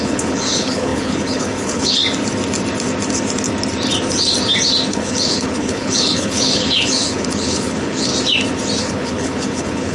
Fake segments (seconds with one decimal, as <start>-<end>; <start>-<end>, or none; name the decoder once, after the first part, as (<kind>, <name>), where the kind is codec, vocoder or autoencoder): 0.0-2.0 (codec, HILCodec); 4.9-8.1; 8.8-9.9